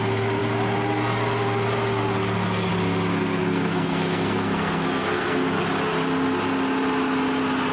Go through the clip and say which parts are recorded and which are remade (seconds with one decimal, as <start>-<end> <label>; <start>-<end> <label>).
0.0-3.1 recorded; 3.1-5.6 remade; 5.6-7.7 recorded